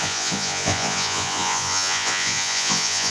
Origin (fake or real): fake